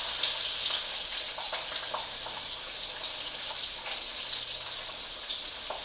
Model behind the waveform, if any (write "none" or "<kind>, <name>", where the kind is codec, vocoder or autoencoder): none